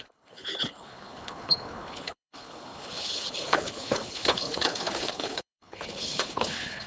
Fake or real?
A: fake